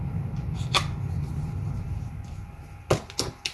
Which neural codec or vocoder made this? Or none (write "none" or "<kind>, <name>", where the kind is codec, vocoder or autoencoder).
none